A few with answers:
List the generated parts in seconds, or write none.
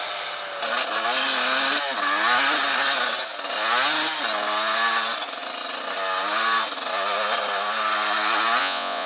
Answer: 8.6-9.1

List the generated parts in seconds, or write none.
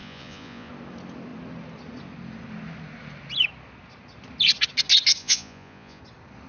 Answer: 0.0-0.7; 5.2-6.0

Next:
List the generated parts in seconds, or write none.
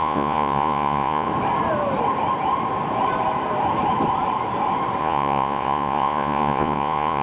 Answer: 0.0-1.3; 5.0-7.2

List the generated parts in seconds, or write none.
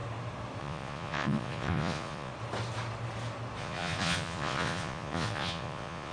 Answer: 0.6-2.3; 3.6-6.1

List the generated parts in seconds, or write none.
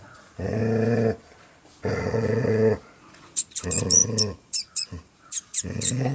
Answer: 0.0-0.6; 1.9-6.1